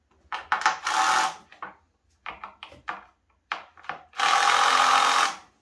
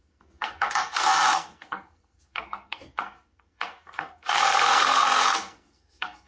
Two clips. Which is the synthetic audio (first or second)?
second